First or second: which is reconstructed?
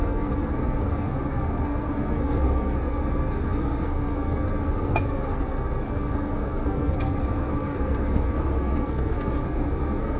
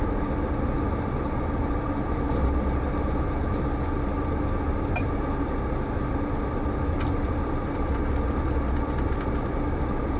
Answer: first